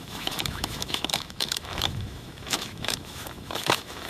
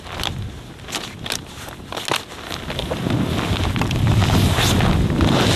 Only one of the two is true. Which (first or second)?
second